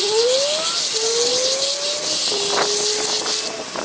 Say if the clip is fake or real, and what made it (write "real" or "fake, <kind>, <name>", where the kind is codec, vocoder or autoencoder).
real